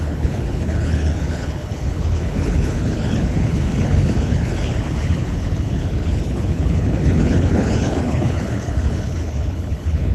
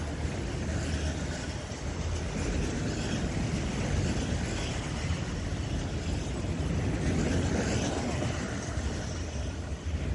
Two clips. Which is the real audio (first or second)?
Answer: second